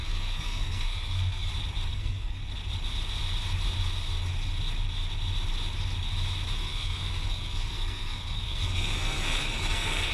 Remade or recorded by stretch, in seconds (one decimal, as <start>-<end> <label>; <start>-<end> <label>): 0.0-1.5 remade; 1.5-1.9 recorded; 1.9-2.4 remade; 2.4-6.6 recorded; 6.6-10.1 remade